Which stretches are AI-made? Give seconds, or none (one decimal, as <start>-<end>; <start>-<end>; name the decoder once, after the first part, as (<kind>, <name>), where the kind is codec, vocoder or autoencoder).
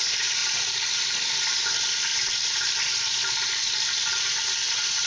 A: 0.4-1.0 (vocoder, BigVGAN v2)